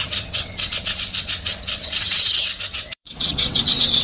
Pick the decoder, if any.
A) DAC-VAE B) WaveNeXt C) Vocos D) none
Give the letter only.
B